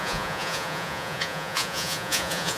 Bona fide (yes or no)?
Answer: no